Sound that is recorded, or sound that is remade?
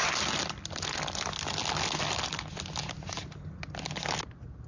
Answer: recorded